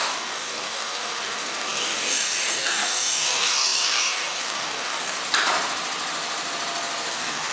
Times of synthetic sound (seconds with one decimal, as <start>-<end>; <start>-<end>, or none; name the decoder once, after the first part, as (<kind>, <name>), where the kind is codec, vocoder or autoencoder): 0.0-5.2 (codec, DAC); 7.1-7.5